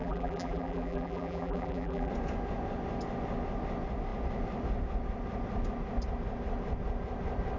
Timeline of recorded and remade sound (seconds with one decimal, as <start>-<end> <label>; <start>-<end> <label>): 0.0-2.1 remade; 2.1-7.6 recorded